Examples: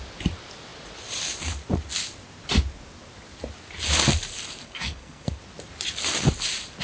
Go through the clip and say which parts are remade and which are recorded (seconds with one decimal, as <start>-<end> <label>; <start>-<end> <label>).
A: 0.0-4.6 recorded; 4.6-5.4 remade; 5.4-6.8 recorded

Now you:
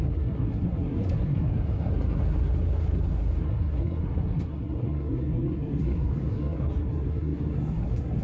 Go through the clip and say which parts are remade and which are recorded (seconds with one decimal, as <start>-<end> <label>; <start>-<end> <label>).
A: 0.0-8.2 remade

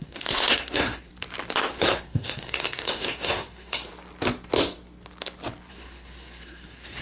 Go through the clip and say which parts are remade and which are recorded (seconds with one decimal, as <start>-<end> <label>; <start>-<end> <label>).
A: 0.0-1.1 remade; 1.1-1.7 recorded; 1.7-3.9 remade; 3.9-5.7 recorded; 5.7-7.0 remade